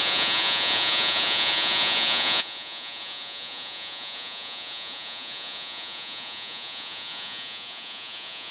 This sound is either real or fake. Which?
fake